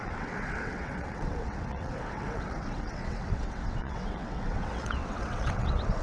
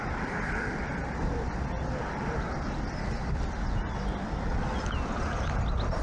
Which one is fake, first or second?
first